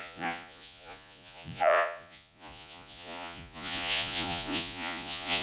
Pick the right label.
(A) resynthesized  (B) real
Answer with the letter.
A